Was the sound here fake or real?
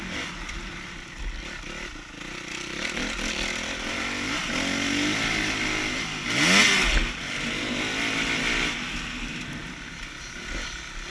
real